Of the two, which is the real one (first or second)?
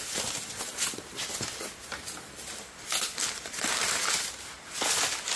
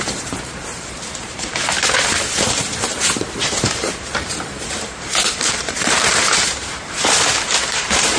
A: first